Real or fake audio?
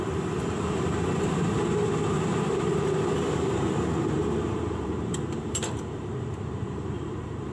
fake